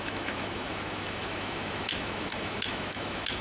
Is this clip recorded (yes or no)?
no